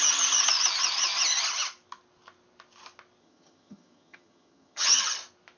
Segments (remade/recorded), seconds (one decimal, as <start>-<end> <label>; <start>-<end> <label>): 0.0-3.2 recorded; 3.2-5.0 remade; 5.0-5.6 recorded